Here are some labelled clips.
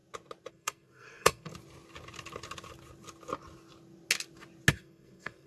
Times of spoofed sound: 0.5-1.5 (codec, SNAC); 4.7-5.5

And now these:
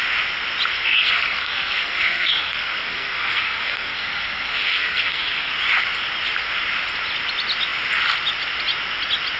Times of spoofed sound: 0.7-5.5 (codec, SNAC)

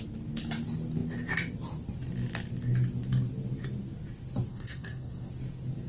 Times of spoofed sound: 4.5-5.3 (codec, SNAC)

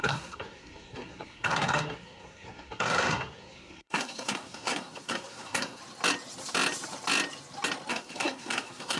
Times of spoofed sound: 0.0-5.8 (codec, SNAC); 7.9-9.0

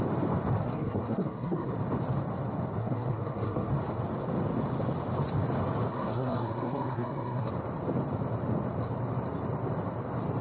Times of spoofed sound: 0.6-1.7 (codec, SNAC); 2.8-3.7; 5.9-7.5